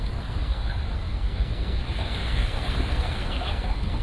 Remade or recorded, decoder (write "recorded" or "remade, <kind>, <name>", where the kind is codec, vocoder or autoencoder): remade, codec, SNAC